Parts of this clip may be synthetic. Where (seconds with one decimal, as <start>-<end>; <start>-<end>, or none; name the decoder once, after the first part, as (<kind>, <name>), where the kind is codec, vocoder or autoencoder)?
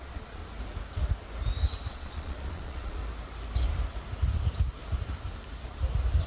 0.0-0.4 (vocoder, Vocos); 1.9-3.0